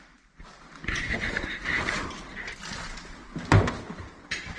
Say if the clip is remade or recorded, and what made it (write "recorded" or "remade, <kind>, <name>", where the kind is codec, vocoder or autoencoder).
recorded